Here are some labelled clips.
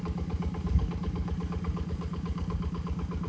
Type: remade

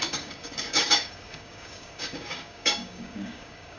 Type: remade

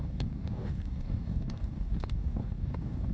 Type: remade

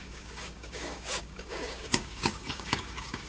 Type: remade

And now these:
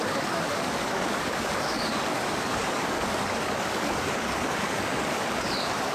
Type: remade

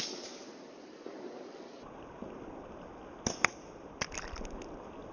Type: recorded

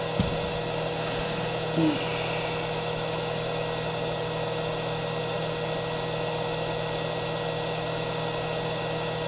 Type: recorded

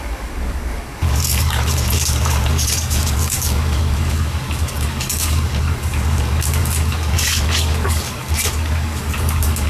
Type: remade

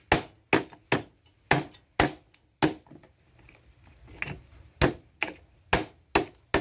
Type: recorded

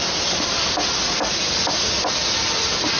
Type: recorded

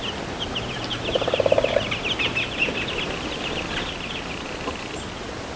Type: recorded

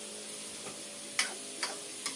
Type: recorded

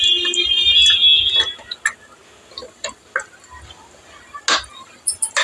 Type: recorded